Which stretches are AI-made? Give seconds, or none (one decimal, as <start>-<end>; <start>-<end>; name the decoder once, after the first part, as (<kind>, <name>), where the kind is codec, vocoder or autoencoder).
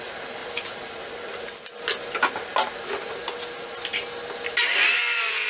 none